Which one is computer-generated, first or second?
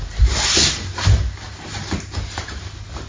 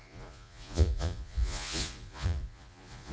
second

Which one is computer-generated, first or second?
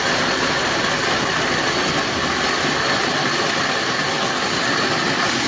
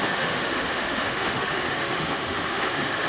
second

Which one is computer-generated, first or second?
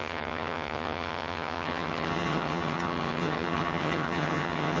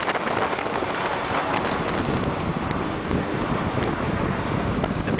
first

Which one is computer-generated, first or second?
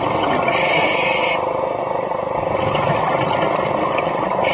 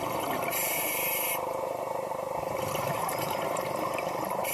second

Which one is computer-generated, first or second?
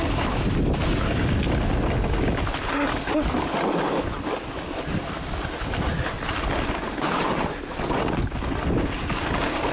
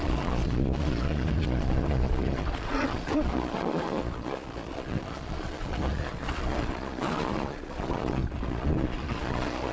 second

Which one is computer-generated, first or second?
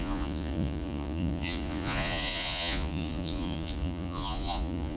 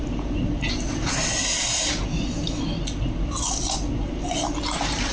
first